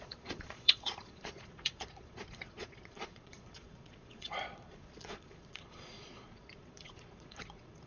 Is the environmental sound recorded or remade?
remade